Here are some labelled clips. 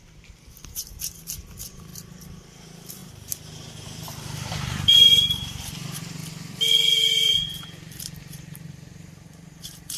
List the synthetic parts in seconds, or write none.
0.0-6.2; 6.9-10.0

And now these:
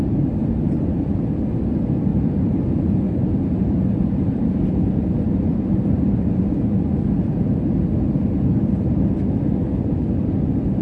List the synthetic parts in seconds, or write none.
0.4-1.3; 2.1-6.4

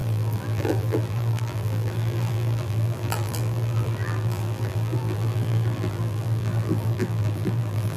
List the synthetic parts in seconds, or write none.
0.0-8.0

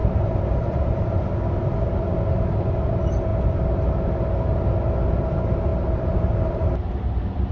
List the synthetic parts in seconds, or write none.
0.0-1.2; 5.7-6.4

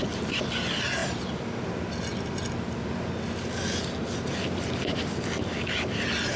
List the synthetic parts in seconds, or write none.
none

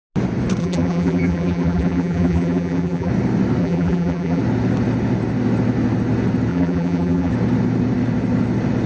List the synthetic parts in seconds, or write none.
0.6-3.1; 3.6-4.4; 6.5-7.3